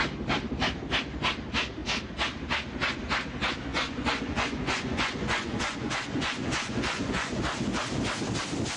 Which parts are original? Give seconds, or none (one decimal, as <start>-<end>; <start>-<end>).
0.0-3.7; 7.4-8.8